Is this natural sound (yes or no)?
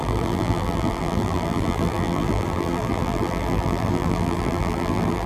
no